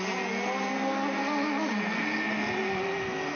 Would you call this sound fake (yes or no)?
no